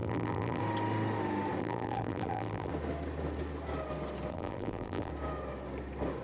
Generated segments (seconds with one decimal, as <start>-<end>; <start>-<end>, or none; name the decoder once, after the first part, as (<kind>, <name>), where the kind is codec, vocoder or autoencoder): 0.0-0.6 (vocoder, BigVGAN v2); 1.6-2.7; 4.3-5.1